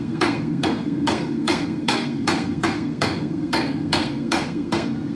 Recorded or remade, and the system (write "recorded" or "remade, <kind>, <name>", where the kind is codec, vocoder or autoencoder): remade, codec, SNAC